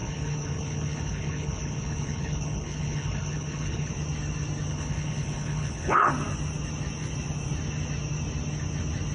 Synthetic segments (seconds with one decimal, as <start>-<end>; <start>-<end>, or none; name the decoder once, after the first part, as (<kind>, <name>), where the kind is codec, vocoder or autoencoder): 0.0-3.9 (codec, HILCodec); 4.7-6.1